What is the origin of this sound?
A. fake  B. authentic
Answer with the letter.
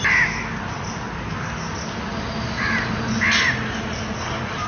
B